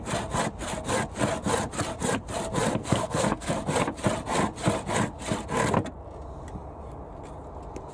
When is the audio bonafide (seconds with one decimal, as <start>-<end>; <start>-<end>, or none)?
0.0-2.8; 3.5-7.9